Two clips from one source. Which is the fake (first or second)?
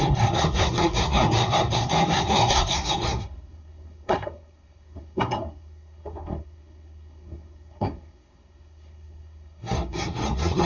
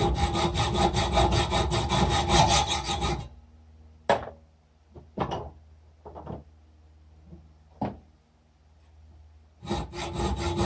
first